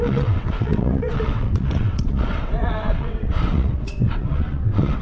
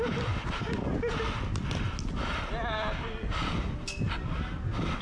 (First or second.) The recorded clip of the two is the second